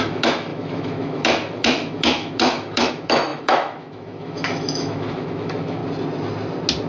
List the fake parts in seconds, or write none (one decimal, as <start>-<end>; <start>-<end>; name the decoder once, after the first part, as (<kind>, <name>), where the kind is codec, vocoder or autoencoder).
0.0-5.8 (autoencoder, DAC-VAE)